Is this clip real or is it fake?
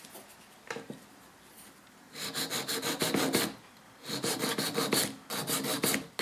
real